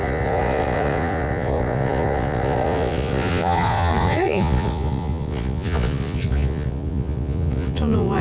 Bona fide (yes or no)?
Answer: no